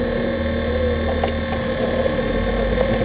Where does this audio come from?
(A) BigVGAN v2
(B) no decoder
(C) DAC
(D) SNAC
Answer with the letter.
B